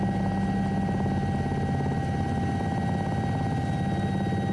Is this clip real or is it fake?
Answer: real